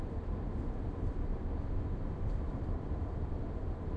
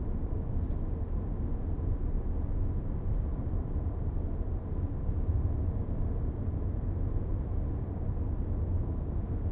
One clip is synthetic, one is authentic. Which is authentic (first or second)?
second